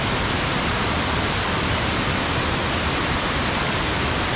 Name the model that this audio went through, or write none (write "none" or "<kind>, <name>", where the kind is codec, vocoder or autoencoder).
none